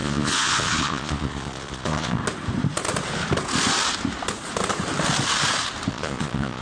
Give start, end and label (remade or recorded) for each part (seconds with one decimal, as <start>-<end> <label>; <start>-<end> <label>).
0.0-2.2 remade; 2.2-5.9 recorded; 5.9-6.6 remade